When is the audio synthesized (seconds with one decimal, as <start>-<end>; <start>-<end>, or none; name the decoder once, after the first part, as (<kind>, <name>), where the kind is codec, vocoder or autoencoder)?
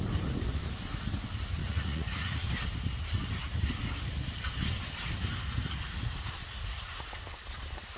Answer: 1.6-2.5 (vocoder, Vocos); 6.4-6.9